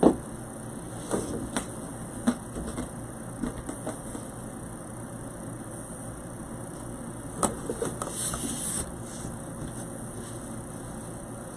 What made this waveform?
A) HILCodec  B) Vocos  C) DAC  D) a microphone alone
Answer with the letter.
D